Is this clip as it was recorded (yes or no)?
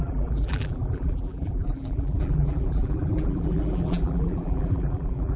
no